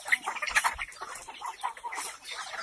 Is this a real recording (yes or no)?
yes